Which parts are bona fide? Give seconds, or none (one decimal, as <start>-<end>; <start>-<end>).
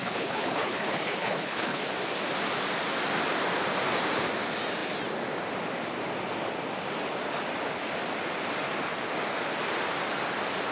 1.8-10.7